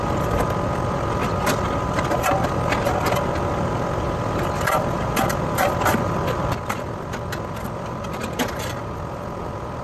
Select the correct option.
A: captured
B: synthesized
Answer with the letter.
B